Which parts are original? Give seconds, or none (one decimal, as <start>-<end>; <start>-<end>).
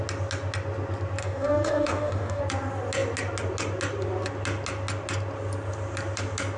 0.0-1.2; 2.4-6.6